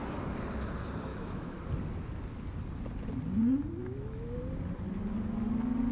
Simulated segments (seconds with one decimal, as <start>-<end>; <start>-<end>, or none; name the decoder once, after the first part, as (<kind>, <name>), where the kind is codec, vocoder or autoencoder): 1.1-1.6 (autoencoder, DAC-VAE); 3.8-4.4